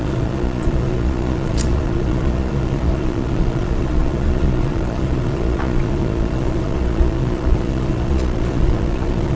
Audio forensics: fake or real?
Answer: fake